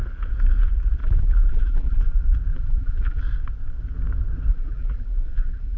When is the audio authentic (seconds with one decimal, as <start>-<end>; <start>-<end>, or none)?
0.0-1.0; 2.1-2.5; 3.2-4.5